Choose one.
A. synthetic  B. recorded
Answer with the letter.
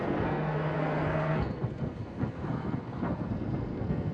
A